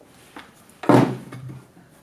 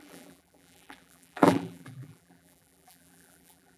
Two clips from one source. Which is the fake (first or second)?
second